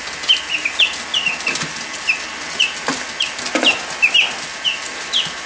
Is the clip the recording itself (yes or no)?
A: yes